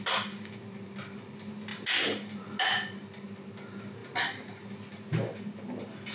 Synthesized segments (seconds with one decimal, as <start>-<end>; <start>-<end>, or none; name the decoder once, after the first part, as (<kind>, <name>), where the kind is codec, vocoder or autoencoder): none